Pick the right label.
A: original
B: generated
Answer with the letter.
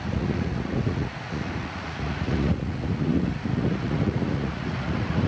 B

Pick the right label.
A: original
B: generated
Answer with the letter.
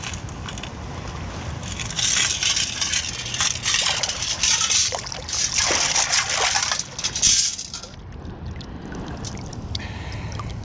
A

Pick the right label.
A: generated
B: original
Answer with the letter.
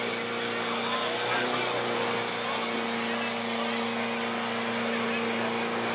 B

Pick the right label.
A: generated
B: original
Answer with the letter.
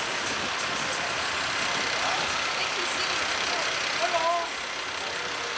B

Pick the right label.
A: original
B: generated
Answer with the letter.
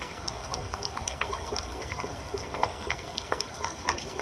B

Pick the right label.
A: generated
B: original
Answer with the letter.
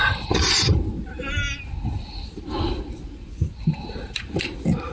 B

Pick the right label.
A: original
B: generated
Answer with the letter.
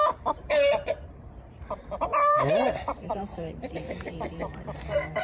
B